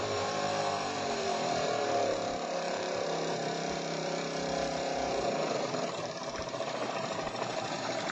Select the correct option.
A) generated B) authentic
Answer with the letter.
A